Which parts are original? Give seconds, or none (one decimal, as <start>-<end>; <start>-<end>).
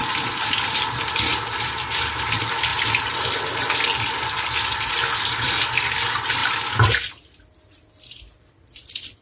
0.0-9.2